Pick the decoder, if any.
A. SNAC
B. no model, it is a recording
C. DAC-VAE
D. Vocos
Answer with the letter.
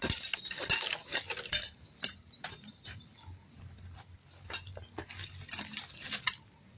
B